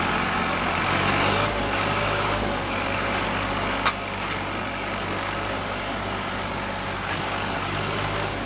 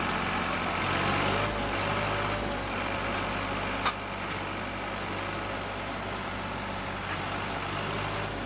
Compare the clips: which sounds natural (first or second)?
second